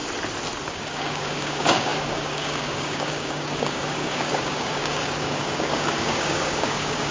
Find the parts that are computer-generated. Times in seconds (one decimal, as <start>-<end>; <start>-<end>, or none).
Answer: 0.7-7.1